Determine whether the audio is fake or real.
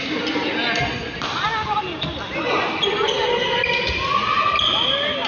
real